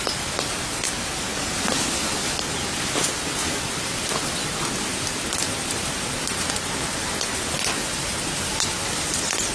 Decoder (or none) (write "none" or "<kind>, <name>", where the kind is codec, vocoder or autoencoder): none